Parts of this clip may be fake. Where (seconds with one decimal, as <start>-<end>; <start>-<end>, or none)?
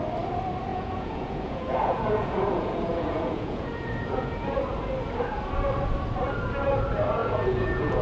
0.7-4.6; 7.2-8.0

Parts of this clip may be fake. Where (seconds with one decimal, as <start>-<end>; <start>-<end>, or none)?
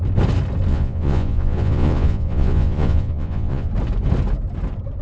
0.7-3.7